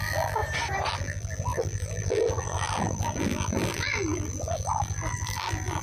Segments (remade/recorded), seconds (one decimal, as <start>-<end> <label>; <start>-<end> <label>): 0.0-0.4 remade; 0.4-0.9 recorded; 0.9-5.8 remade